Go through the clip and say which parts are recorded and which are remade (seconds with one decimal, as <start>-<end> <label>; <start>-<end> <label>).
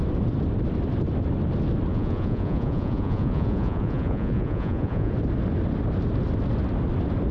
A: 0.0-1.9 recorded; 1.9-5.1 remade; 5.1-7.3 recorded